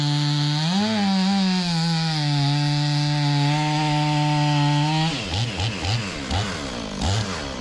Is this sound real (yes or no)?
yes